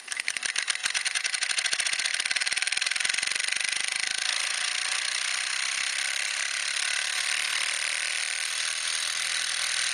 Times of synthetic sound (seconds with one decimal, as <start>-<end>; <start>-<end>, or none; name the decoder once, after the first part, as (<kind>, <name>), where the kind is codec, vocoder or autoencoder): 0.8-2.1 (vocoder, Vocos)